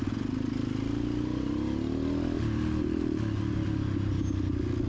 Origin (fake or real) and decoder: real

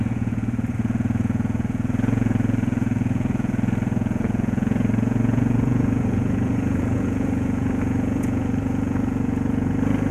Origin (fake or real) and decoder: fake, vocoder, Vocos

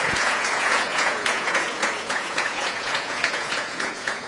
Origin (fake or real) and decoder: fake, vocoder, Vocos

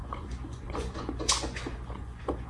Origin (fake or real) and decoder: fake, vocoder, Vocos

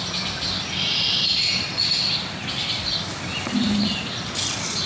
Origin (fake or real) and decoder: real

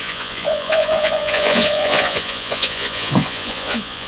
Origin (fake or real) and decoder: fake, vocoder, Vocos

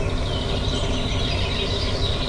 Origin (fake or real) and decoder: real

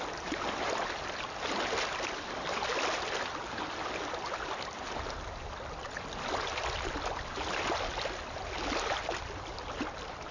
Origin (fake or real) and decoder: real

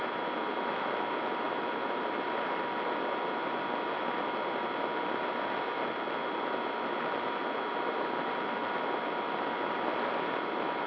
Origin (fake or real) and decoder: real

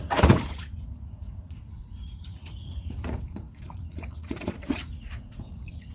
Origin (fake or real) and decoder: fake, vocoder, Vocos